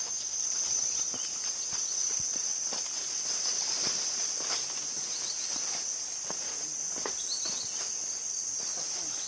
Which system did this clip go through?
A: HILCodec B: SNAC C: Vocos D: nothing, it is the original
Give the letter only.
D